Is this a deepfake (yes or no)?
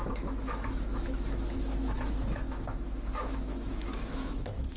yes